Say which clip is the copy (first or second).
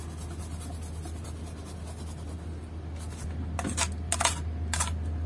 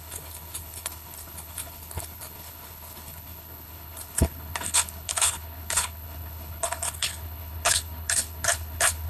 second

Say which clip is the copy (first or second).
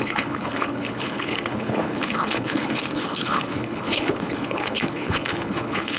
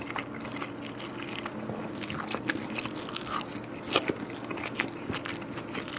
first